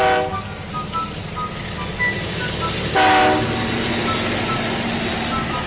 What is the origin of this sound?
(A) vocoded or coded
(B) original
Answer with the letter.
B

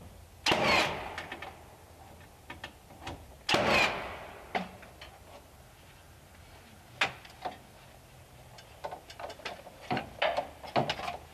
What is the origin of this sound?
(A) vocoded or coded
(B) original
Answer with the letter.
B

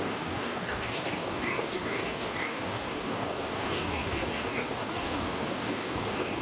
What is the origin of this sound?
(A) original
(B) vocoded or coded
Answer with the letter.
B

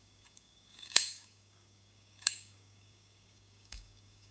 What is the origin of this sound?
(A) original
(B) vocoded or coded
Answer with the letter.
B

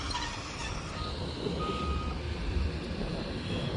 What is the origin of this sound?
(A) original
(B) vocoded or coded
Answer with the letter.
A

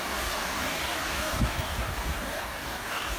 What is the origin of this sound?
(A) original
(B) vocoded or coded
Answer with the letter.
B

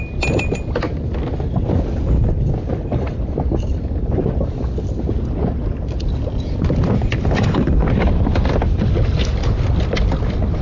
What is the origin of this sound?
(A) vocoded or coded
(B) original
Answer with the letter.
B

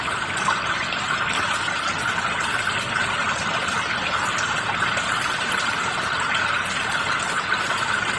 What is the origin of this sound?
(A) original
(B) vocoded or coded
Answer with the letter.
A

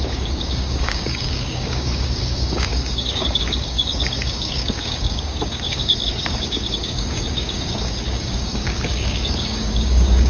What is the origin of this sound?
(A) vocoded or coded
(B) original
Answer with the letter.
A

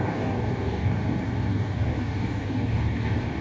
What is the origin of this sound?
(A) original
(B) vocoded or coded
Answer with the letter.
B